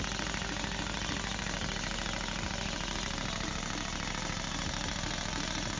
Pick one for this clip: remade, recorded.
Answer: recorded